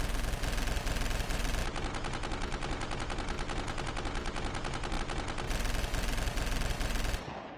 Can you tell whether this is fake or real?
real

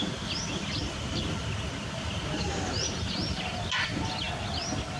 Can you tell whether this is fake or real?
real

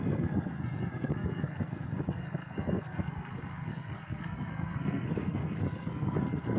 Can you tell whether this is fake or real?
fake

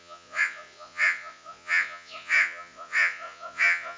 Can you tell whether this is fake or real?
fake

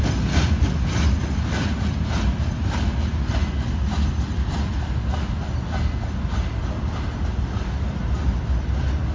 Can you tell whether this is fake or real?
real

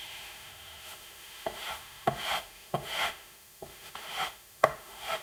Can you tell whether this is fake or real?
fake